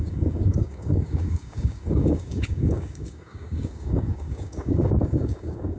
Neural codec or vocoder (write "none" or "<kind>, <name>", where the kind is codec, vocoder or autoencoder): codec, DAC